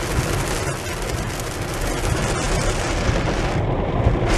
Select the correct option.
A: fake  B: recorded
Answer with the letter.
B